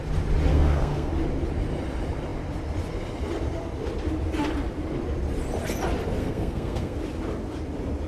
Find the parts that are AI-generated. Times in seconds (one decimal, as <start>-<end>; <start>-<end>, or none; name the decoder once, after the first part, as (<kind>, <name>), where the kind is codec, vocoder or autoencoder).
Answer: 0.5-1.1 (codec, SNAC); 6.2-7.0